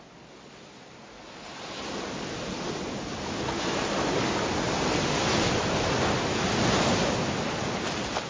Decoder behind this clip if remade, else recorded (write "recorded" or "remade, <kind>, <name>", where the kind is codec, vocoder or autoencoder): recorded